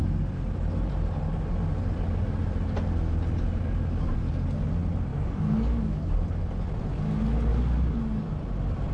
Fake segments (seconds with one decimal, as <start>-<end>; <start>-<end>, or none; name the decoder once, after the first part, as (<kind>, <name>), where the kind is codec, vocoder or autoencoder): 5.1-6.1 (codec, DAC); 7.5-8.3